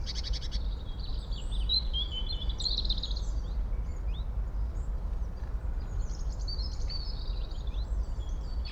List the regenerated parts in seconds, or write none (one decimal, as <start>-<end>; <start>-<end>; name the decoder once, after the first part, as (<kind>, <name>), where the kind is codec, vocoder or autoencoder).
none